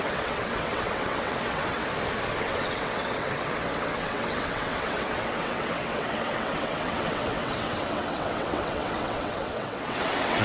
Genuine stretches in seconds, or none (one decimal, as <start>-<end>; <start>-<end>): 1.8-2.4